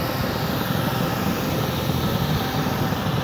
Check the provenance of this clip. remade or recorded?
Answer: recorded